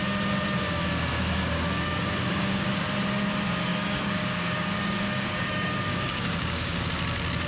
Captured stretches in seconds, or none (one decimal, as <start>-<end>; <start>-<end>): 0.0-1.1; 2.7-3.7; 6.9-7.5